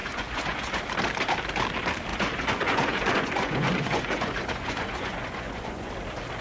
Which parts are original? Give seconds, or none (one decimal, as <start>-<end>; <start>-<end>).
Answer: 0.8-2.1; 5.9-6.4

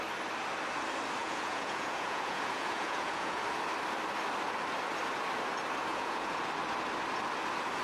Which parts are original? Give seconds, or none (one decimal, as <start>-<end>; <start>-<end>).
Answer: 0.0-1.2; 3.4-5.9; 6.5-7.8